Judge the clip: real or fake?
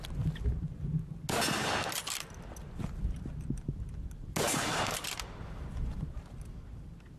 real